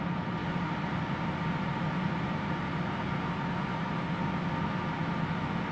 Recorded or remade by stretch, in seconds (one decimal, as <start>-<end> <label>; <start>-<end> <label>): 0.0-0.4 recorded; 0.4-1.2 remade; 1.2-1.7 recorded; 1.7-3.2 remade; 3.2-3.7 recorded; 3.7-4.4 remade; 4.4-5.7 recorded